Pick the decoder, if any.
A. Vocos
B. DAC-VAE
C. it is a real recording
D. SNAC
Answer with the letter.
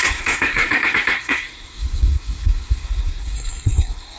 D